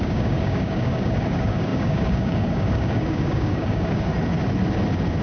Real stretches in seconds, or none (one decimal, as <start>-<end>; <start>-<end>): 4.1-5.2